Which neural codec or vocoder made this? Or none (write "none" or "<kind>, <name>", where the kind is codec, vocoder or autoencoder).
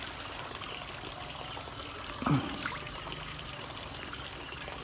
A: none